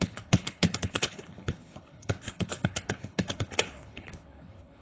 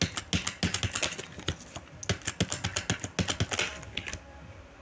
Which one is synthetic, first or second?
first